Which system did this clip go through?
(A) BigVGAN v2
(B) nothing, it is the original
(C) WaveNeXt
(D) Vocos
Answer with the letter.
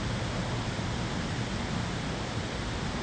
B